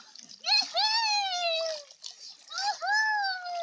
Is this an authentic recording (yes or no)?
yes